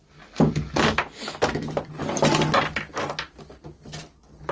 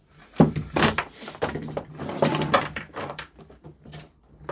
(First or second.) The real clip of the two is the first